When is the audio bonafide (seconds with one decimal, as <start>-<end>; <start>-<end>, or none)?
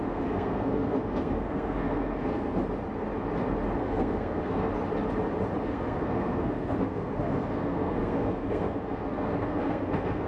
2.6-3.8; 4.7-5.6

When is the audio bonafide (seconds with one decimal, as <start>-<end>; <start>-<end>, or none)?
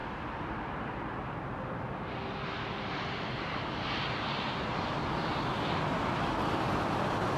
0.0-7.4